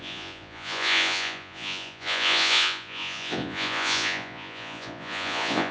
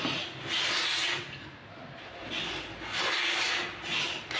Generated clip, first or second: first